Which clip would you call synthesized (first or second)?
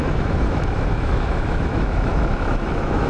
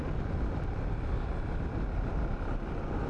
first